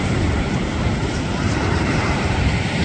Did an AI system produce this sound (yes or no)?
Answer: yes